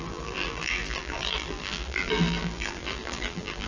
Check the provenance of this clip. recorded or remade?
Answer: remade